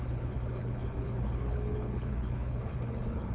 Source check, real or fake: fake